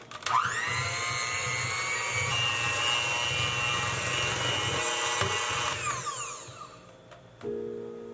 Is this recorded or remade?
recorded